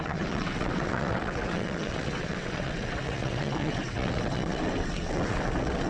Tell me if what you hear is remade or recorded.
remade